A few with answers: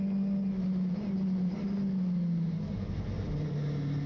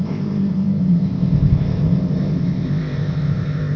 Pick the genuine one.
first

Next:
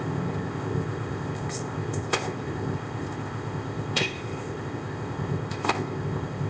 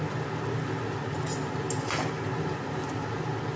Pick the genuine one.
second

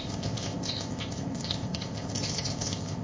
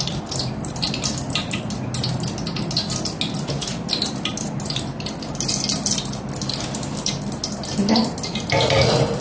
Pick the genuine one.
second